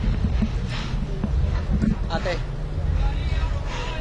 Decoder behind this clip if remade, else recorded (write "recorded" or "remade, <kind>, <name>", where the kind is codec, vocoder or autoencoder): recorded